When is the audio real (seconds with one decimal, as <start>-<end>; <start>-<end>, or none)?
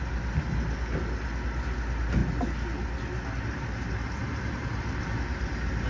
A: 0.0-5.9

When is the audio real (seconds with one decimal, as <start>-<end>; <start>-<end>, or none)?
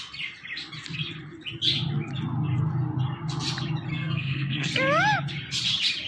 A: 0.0-3.9; 4.7-6.1